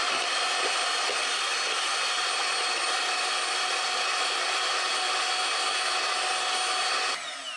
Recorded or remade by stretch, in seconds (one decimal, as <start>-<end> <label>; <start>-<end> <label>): 0.0-7.6 recorded